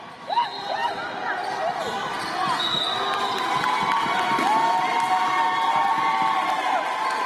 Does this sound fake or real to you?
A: real